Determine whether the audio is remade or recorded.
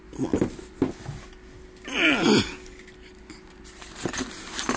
recorded